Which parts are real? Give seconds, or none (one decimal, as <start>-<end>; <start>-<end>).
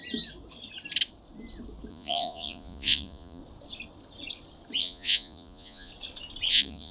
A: 0.0-1.9; 3.4-4.8; 5.9-6.5